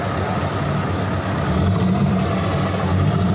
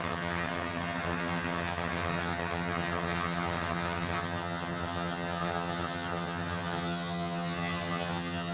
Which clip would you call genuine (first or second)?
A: first